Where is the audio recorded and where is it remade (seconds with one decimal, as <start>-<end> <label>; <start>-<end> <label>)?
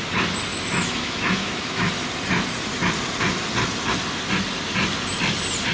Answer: 0.0-0.5 recorded; 0.5-1.9 remade; 1.9-5.7 recorded